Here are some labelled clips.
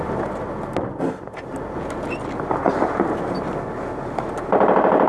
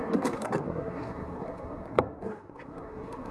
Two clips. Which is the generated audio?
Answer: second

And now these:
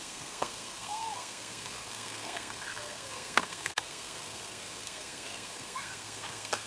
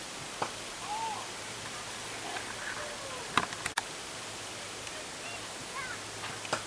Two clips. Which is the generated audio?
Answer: first